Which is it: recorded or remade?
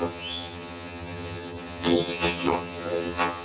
remade